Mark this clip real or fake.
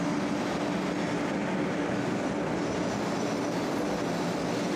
real